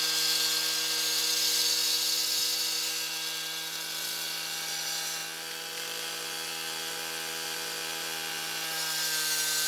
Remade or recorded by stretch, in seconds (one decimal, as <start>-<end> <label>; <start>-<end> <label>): 0.0-9.7 recorded